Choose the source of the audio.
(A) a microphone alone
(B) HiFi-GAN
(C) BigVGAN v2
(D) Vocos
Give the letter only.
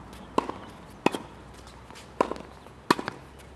A